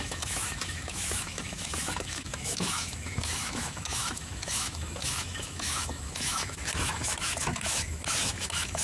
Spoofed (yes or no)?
yes